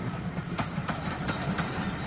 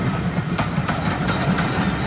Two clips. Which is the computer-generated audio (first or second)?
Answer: first